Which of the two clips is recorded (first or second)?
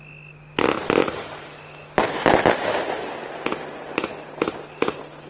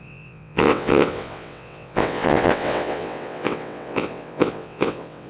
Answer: first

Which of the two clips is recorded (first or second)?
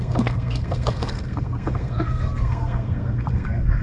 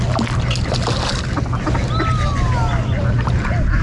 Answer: second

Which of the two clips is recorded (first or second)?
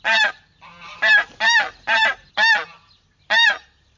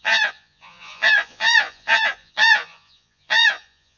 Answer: first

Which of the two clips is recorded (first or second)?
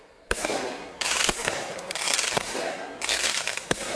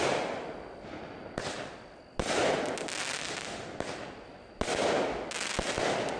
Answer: second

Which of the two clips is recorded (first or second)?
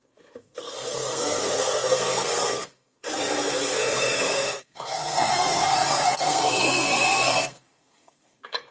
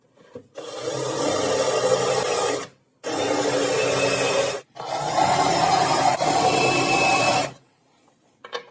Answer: second